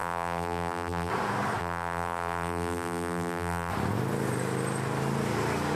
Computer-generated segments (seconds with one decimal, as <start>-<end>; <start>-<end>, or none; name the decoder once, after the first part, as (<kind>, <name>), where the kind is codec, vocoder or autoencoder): 0.0-1.1 (vocoder, BigVGAN v2); 1.6-3.7